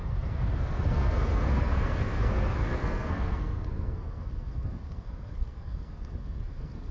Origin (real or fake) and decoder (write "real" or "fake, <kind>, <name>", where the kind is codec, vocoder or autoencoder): fake, codec, SNAC